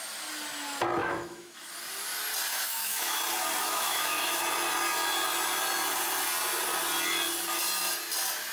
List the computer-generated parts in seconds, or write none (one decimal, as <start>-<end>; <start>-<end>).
1.0-1.7; 2.5-3.2; 3.6-4.4